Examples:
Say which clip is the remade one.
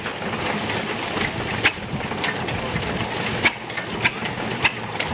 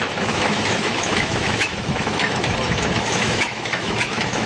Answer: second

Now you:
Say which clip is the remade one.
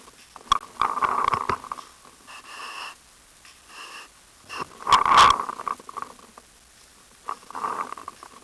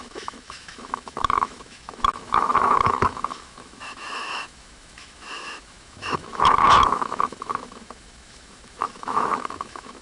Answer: second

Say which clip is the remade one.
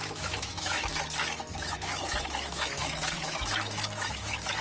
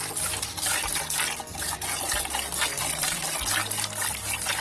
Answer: first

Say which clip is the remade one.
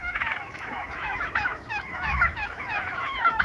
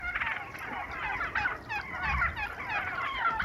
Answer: first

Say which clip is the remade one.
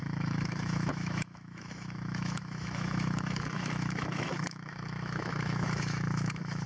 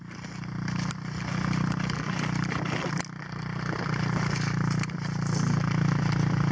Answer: first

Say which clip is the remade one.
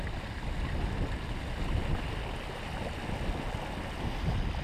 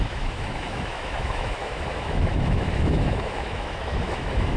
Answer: second